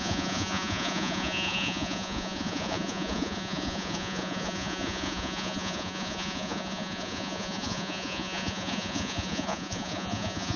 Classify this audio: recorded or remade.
remade